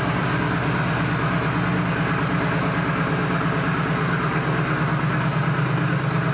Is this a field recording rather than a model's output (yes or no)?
yes